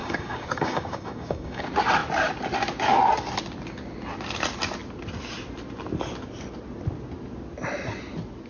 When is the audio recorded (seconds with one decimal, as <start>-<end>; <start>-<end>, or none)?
1.6-8.5